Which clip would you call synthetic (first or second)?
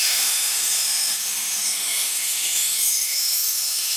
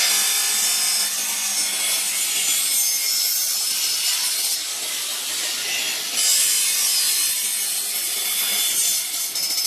first